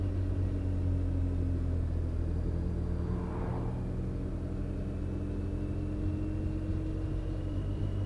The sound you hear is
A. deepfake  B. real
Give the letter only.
B